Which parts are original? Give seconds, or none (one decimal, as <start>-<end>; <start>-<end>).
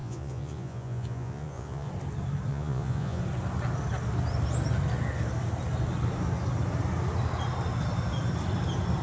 1.9-2.5; 3.2-9.0